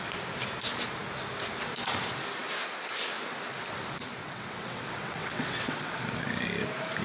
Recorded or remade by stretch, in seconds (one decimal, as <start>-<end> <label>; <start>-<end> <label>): 0.0-4.2 recorded; 4.2-5.9 remade; 5.9-7.0 recorded